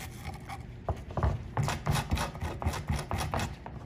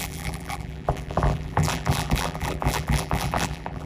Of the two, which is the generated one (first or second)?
second